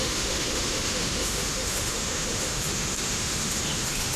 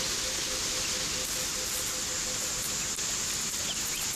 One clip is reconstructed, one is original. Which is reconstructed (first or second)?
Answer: first